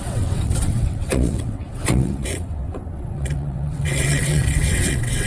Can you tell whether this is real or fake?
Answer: fake